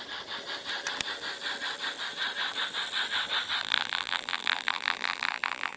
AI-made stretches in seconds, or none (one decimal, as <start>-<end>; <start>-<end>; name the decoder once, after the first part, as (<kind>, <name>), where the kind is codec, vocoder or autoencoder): 3.6-5.8 (vocoder, BigVGAN v2)